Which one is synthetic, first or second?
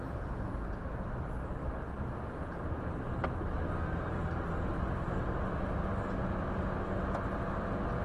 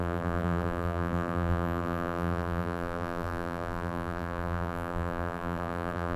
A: second